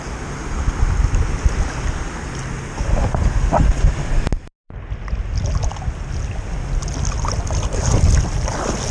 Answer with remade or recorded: recorded